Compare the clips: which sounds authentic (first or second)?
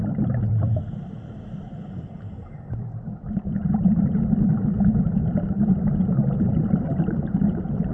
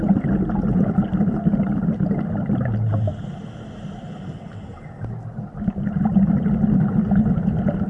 second